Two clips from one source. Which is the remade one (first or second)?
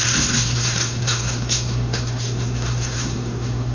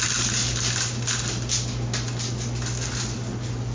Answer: first